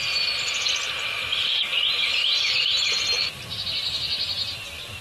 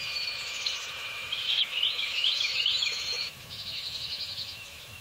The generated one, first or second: second